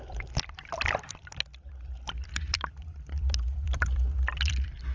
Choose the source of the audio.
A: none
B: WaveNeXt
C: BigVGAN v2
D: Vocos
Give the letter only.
C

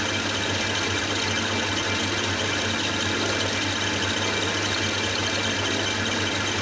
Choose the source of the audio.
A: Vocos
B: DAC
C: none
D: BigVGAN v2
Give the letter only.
C